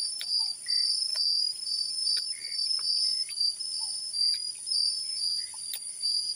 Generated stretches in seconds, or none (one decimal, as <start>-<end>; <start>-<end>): none

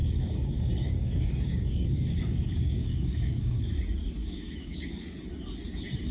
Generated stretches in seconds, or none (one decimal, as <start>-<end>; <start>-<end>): 0.0-3.7; 4.2-5.2

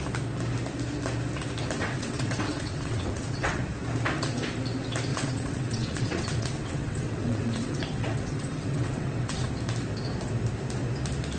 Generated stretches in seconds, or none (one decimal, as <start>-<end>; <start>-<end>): 1.8-3.6; 5.1-9.5

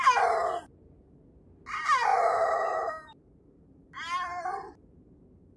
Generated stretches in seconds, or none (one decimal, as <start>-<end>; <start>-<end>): 2.1-5.6

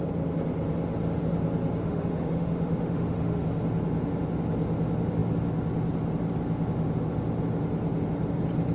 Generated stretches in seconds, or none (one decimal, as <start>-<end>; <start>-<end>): 1.8-3.6

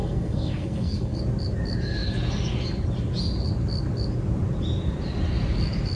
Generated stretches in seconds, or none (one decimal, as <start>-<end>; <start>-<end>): 0.0-1.2